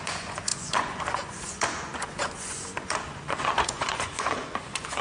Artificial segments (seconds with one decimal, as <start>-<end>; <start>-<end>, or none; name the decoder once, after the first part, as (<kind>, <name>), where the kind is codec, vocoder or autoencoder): 0.0-5.0 (vocoder, Vocos)

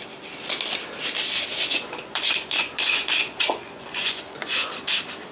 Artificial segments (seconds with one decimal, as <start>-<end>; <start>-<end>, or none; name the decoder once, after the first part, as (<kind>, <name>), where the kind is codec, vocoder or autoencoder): 1.5-4.7 (vocoder, Vocos)

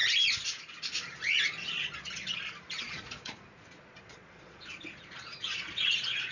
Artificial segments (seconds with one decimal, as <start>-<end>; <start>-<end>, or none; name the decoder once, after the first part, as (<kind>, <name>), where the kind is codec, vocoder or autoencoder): 2.8-6.3 (vocoder, Vocos)

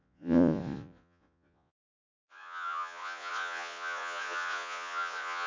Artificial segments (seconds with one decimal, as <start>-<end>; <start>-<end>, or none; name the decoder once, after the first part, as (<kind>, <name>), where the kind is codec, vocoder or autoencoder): 0.0-5.5 (vocoder, Vocos)

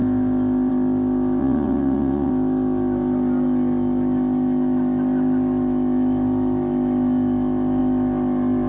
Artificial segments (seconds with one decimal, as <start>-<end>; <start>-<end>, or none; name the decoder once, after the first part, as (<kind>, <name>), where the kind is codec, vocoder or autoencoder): 1.4-2.3 (vocoder, Vocos)

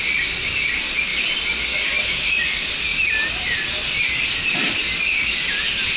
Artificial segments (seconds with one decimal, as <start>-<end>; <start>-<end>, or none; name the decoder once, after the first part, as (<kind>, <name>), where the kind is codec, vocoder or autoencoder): none

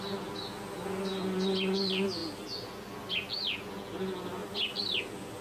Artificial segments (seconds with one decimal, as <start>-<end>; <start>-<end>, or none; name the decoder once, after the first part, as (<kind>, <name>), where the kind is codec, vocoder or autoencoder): none